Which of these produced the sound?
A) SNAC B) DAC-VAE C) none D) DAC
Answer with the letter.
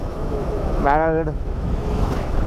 B